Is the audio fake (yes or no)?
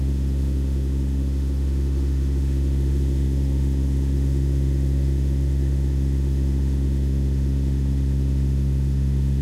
yes